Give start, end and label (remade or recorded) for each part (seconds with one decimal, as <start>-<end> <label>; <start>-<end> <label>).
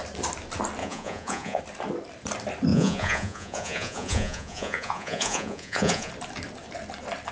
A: 0.0-0.8 recorded; 0.8-1.6 remade; 1.6-2.7 recorded; 2.7-6.1 remade; 6.1-7.3 recorded